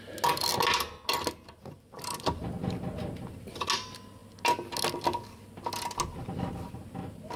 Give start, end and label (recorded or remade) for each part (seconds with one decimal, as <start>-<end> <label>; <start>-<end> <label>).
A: 0.0-7.4 recorded